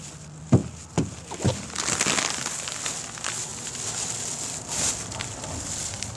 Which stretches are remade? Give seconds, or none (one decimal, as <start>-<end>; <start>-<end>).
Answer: 0.0-0.6; 1.6-6.2

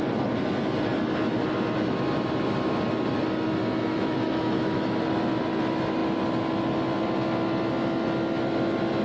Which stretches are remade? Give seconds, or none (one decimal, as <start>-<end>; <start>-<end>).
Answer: 3.9-5.0

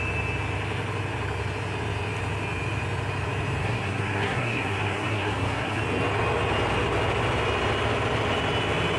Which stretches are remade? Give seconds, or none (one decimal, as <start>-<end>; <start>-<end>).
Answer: 3.6-5.8